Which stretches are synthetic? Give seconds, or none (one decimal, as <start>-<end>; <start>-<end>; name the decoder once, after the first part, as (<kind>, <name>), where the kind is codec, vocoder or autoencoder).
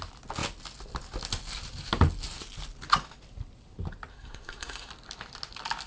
4.1-4.9 (codec, SNAC)